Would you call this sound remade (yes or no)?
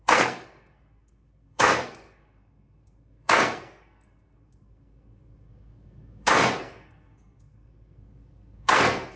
yes